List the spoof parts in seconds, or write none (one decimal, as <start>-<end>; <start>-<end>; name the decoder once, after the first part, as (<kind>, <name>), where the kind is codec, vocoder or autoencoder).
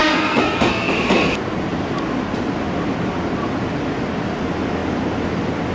0.0-0.9 (codec, SNAC)